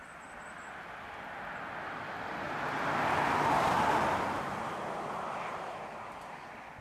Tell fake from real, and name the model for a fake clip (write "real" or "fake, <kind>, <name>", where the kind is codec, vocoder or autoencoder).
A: real